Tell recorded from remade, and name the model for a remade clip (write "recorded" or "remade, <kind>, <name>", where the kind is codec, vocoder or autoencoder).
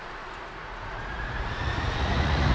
remade, vocoder, Vocos